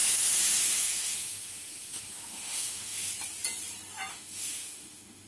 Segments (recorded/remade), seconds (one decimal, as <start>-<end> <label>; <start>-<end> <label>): 0.0-3.1 remade; 3.1-4.1 recorded; 4.1-5.3 remade